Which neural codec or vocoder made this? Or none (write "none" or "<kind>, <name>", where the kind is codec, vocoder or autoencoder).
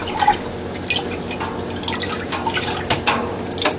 none